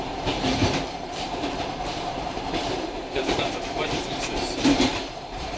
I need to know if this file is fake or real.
fake